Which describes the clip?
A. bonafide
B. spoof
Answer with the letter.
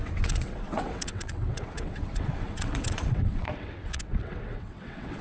B